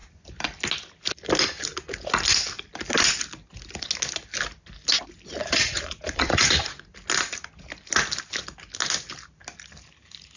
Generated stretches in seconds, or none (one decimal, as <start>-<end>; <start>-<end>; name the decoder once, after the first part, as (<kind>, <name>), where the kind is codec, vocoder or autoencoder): 5.4-6.9 (vocoder, Vocos)